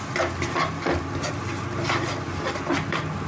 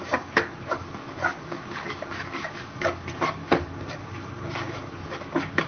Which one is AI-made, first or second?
second